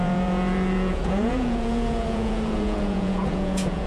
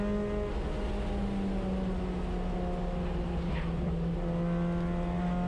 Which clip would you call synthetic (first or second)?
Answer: first